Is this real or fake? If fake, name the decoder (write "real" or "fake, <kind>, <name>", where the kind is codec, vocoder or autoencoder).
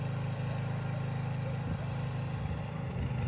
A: real